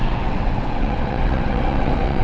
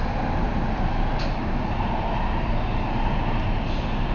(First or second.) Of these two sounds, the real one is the second